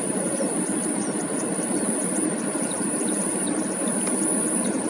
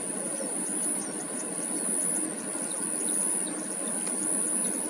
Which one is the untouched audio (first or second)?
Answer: second